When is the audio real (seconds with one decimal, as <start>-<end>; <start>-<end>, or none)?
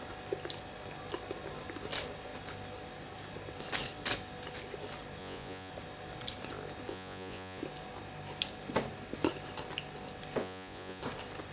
0.0-5.2; 5.7-6.9; 7.6-10.4; 11.0-11.5